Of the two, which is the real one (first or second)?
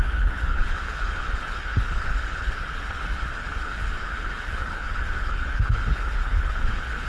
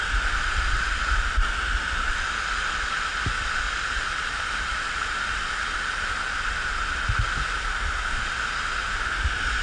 second